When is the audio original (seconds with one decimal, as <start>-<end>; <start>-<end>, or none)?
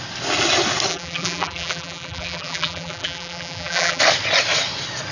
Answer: 0.0-0.9; 4.0-5.1